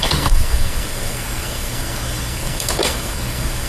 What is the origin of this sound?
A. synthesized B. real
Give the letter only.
A